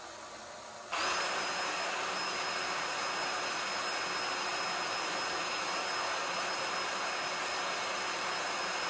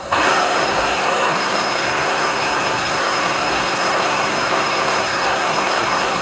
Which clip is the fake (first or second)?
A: second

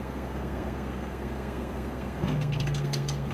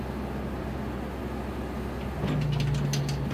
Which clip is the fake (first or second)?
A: first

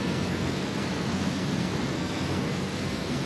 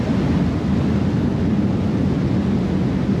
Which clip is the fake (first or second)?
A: first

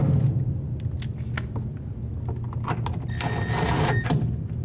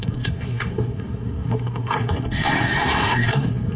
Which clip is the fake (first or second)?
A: second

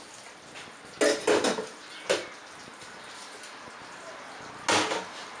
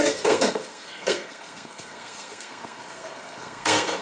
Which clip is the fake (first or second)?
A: second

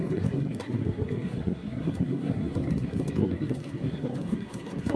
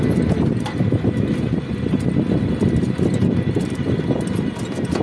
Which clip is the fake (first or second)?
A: first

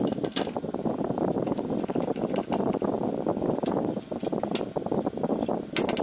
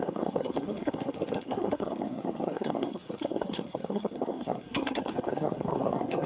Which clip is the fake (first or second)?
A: second